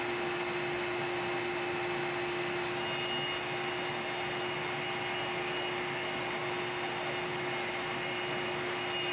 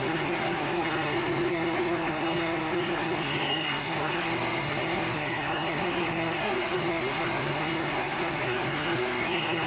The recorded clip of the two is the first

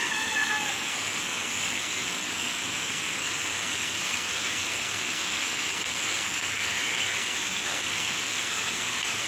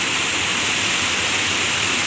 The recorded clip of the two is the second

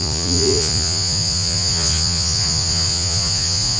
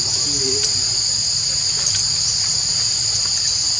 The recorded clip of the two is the second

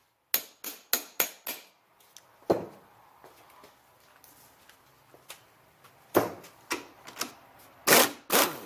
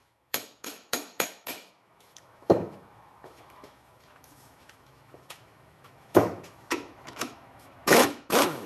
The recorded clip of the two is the first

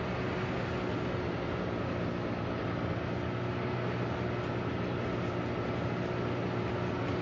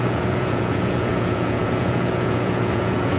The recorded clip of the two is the first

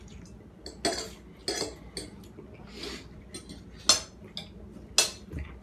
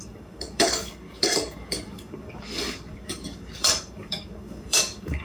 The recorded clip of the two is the first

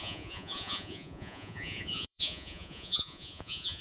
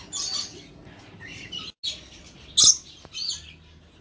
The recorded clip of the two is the second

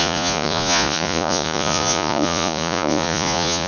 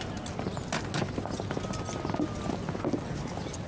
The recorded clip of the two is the second